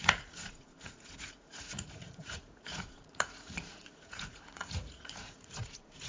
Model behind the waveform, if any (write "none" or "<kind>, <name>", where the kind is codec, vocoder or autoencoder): vocoder, Vocos